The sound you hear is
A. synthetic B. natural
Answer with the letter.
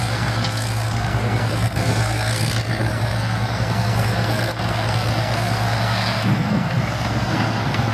A